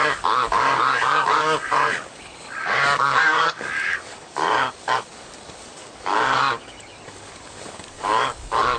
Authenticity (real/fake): fake